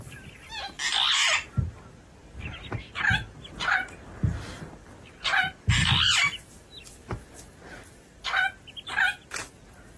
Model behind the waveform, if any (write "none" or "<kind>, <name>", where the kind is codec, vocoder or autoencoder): none